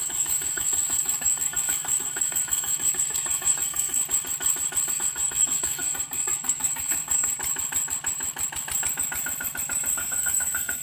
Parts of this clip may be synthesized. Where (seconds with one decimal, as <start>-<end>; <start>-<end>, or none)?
0.0-4.0; 4.9-7.4; 9.9-10.8